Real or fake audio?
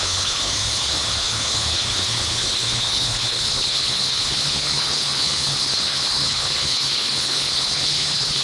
fake